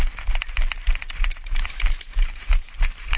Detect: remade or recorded remade